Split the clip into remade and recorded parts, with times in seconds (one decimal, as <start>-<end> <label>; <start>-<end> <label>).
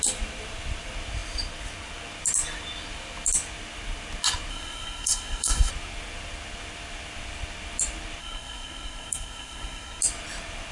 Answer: 0.0-4.5 recorded; 4.5-5.7 remade; 5.7-8.2 recorded; 8.2-10.0 remade; 10.0-10.7 recorded